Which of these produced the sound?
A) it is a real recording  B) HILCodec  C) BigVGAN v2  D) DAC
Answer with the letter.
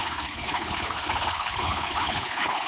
B